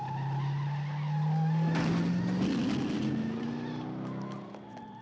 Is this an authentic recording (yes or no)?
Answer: yes